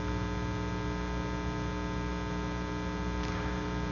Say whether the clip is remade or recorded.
recorded